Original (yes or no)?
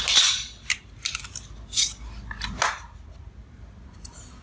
yes